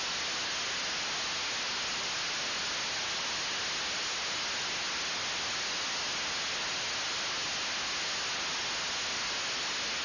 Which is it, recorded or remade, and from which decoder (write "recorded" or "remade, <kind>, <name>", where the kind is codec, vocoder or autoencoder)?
recorded